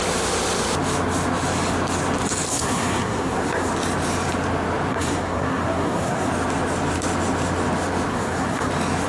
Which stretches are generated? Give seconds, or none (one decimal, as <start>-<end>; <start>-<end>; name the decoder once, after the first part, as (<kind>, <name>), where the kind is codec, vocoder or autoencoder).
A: 2.5-3.7 (codec, SNAC); 4.9-6.3; 8.1-8.7